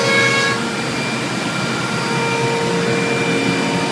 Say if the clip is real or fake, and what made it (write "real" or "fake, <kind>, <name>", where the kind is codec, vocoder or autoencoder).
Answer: real